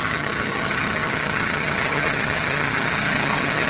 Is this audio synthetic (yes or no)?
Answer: yes